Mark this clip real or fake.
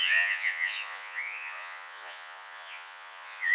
fake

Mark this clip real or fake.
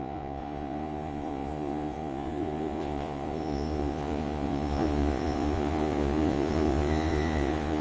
fake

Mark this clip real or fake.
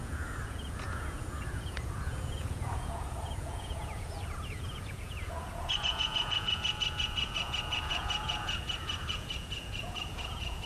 fake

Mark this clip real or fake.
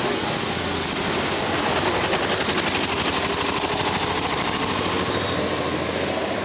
real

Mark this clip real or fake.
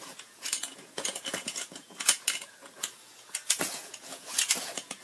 fake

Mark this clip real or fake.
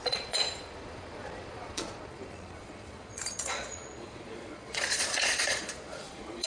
fake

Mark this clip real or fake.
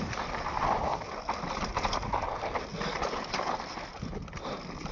real